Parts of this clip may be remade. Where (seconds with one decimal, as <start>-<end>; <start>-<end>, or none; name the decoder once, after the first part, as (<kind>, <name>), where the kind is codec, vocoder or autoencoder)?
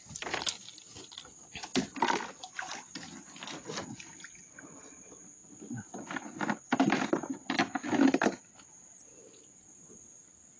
none